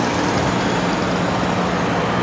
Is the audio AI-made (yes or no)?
no